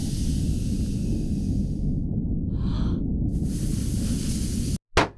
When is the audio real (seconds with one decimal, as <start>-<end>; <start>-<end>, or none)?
0.0-5.2